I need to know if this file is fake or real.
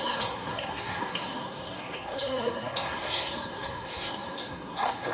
fake